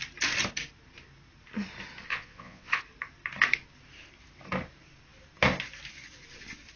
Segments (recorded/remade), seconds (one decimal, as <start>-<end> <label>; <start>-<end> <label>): 0.0-2.1 recorded; 2.1-2.8 remade; 2.8-6.8 recorded